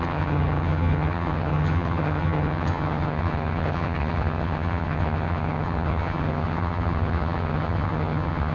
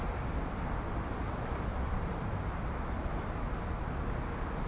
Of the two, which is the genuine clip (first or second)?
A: second